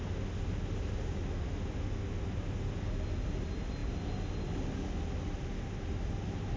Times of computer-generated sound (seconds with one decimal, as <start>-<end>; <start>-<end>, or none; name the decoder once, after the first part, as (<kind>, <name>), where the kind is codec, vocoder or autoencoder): none